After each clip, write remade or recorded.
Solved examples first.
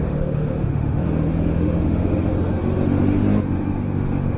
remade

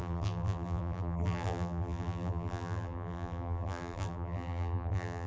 remade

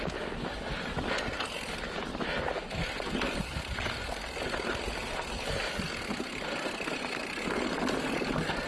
recorded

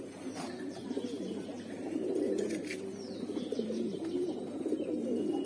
recorded